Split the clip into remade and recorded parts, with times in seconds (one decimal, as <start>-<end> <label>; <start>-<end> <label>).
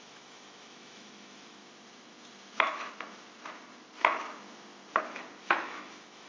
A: 0.0-1.6 remade; 1.6-5.4 recorded; 5.4-6.3 remade